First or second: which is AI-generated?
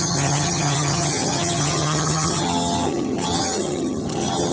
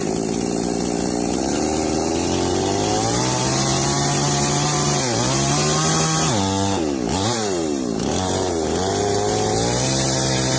first